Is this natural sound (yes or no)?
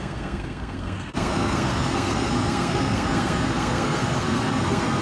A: no